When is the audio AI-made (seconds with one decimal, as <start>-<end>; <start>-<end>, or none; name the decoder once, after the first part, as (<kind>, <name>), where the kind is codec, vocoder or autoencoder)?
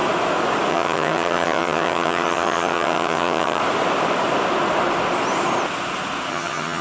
0.7-3.6 (vocoder, HiFi-GAN); 6.3-6.8